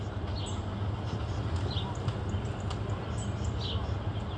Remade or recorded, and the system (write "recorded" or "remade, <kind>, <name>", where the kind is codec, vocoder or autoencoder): recorded